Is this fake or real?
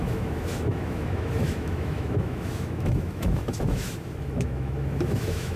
fake